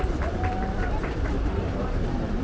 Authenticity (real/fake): fake